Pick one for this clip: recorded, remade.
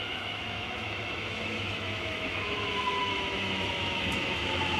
remade